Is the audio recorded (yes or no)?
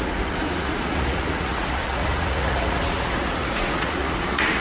no